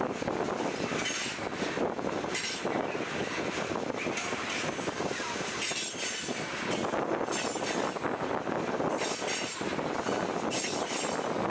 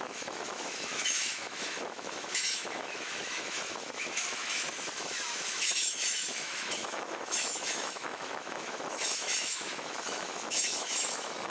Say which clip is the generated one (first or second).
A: second